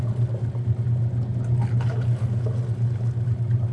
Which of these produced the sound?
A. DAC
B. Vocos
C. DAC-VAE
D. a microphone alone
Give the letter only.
D